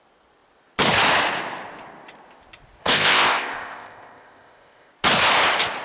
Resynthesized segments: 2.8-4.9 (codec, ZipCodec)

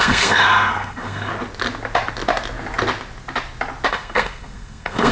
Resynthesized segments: 0.0-1.3 (codec, SNAC); 3.9-5.1